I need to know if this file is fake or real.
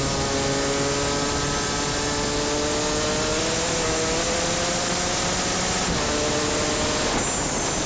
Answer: real